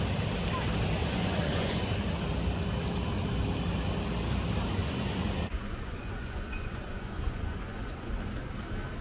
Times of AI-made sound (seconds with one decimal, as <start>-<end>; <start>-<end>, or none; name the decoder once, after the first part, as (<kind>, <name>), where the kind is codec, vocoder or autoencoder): 1.0-1.9 (vocoder, Vocos); 4.8-8.1